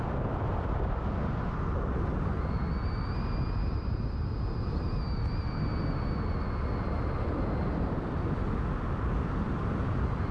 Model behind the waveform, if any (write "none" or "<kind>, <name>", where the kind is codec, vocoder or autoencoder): none